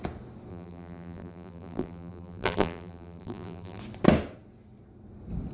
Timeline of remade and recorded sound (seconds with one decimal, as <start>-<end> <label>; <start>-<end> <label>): 0.0-0.5 recorded; 0.5-3.8 remade; 3.8-5.5 recorded